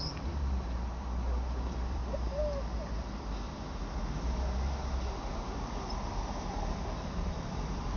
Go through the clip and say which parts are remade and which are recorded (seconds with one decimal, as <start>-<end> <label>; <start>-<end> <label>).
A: 0.0-2.0 remade; 2.0-5.3 recorded; 5.3-8.0 remade